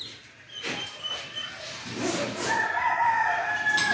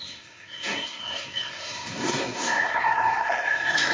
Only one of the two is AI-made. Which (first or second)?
second